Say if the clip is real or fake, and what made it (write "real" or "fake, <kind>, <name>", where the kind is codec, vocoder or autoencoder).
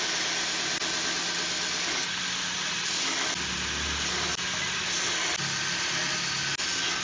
real